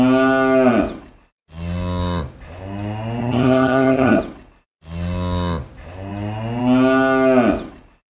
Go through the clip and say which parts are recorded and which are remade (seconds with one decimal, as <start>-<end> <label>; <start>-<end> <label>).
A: 0.0-3.2 recorded; 3.2-4.2 remade; 4.2-8.1 recorded